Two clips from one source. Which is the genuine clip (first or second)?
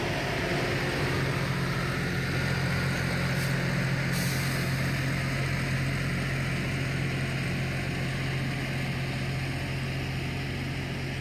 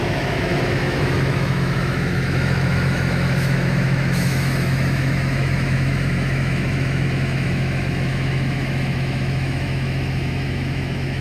first